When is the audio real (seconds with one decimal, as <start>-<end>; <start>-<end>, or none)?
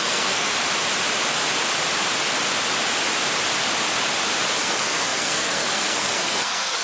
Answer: 0.5-4.6